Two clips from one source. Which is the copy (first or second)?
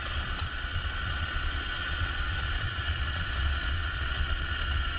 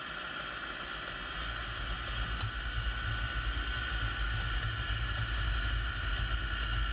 first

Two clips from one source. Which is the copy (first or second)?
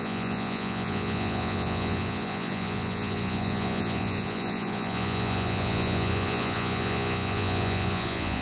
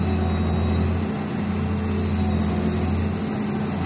first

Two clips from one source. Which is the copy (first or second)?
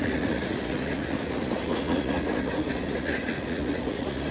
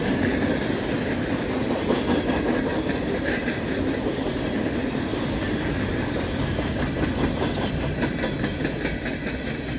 first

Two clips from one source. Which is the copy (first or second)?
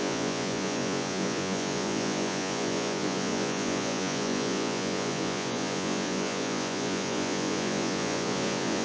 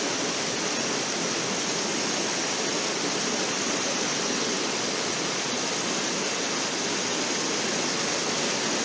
first